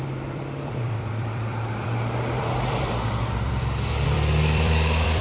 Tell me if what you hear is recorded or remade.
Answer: remade